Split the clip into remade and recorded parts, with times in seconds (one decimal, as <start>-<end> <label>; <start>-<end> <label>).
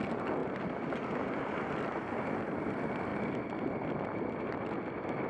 0.0-3.1 recorded; 3.1-3.7 remade; 3.7-5.3 recorded